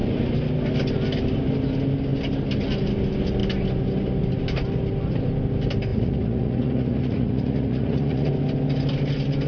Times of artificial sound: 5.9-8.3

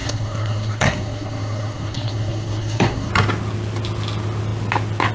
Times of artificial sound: 0.0-3.1

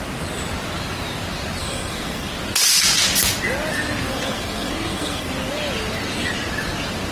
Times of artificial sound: 1.6-2.3; 4.1-5.3

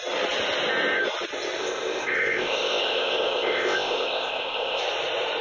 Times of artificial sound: 1.6-4.8